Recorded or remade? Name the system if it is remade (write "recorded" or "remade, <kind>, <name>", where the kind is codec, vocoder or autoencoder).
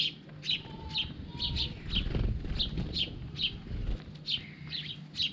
recorded